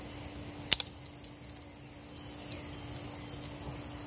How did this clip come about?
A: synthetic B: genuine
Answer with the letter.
B